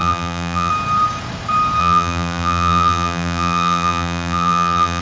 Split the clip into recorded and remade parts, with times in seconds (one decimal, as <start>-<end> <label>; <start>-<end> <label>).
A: 0.0-0.7 remade; 0.7-1.8 recorded; 1.8-5.0 remade

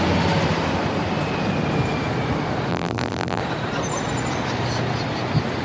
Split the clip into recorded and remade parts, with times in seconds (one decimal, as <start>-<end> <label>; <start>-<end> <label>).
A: 0.0-2.7 recorded; 2.7-3.4 remade; 3.4-5.6 recorded